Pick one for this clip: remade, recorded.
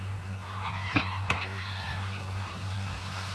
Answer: remade